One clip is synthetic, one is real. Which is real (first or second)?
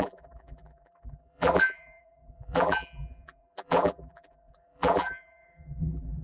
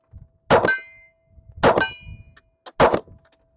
second